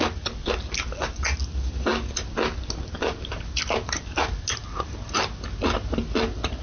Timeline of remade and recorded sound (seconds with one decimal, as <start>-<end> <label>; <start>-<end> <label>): 0.0-6.6 recorded